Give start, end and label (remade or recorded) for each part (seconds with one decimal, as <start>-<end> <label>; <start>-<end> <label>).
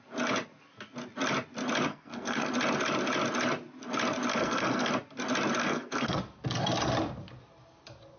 0.0-1.9 recorded; 1.9-2.5 remade; 2.5-4.3 recorded; 4.3-4.9 remade; 4.9-5.6 recorded; 5.6-6.2 remade; 6.2-8.2 recorded